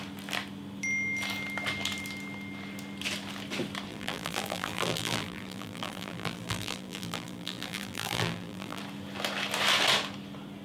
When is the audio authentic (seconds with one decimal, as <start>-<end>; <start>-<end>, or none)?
0.0-3.9; 8.8-10.6